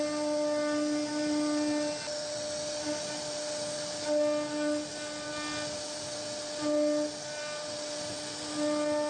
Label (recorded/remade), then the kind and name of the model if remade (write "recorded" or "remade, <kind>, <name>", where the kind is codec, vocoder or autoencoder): recorded